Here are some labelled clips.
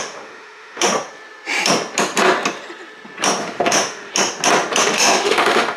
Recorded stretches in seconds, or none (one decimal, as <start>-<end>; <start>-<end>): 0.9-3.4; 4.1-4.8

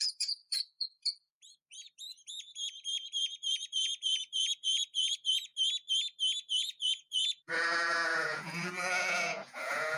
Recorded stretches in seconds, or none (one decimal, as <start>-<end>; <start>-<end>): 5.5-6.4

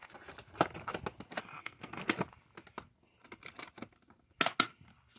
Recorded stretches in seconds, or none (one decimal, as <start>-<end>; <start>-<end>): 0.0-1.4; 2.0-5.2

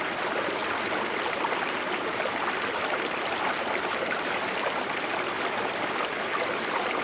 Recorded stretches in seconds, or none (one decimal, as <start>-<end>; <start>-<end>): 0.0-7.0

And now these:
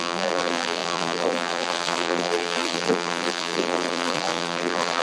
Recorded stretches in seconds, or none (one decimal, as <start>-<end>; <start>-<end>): none

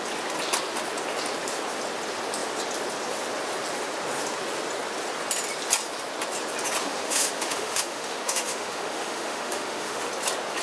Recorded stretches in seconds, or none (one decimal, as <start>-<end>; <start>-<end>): 0.0-6.8; 10.1-10.6